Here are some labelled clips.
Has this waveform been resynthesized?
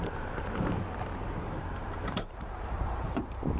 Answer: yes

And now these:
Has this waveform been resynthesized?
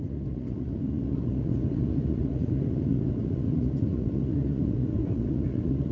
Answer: yes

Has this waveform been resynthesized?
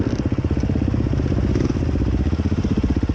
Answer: no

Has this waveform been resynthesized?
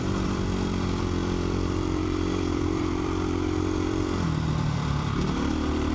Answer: yes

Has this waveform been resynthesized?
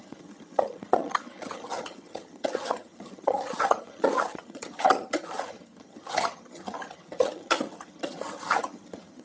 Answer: yes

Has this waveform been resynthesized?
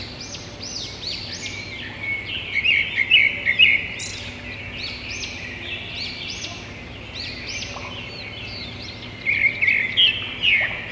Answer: no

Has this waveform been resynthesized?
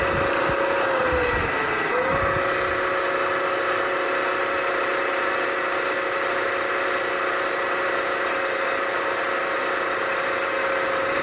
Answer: no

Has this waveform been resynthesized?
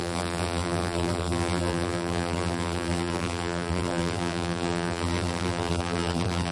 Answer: yes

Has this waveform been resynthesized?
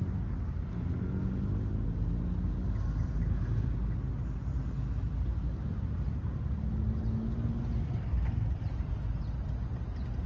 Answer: no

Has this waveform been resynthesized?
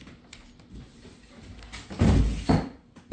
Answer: no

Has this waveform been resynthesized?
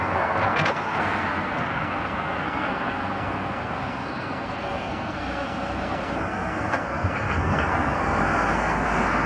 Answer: yes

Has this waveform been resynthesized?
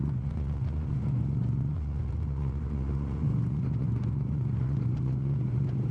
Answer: yes